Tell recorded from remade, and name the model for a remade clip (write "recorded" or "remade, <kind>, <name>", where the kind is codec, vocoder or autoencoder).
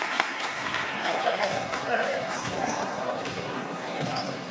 remade, codec, SNAC